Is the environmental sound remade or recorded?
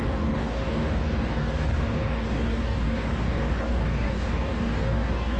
remade